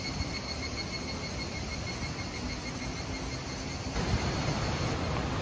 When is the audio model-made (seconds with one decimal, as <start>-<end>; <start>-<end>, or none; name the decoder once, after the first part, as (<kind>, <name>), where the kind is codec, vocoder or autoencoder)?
none